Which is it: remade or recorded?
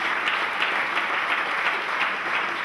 recorded